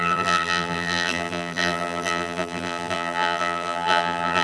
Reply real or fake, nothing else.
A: fake